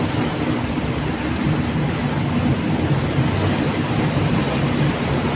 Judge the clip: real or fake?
real